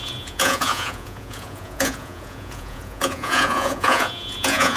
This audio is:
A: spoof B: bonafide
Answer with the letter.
A